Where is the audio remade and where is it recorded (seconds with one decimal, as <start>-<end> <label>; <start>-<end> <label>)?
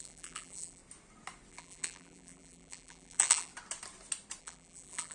0.0-0.8 remade; 0.8-1.5 recorded; 1.5-3.5 remade; 3.5-4.4 recorded; 4.4-5.1 remade